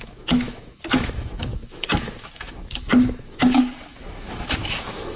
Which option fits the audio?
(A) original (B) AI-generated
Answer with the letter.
B